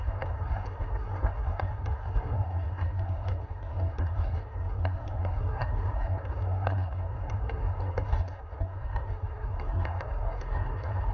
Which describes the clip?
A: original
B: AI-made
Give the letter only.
B